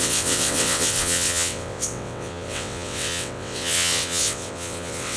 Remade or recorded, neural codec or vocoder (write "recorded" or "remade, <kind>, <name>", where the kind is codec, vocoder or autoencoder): remade, vocoder, WaveNeXt